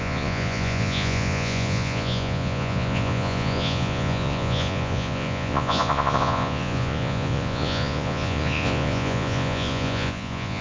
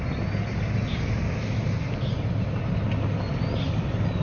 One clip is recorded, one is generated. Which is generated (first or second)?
first